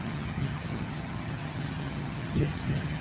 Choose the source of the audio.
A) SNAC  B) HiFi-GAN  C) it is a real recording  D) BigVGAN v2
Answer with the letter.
B